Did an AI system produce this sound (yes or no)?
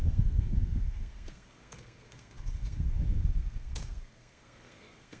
yes